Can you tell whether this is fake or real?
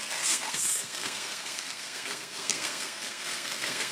fake